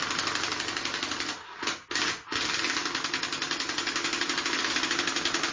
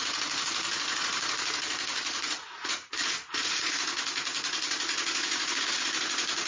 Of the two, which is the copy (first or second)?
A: second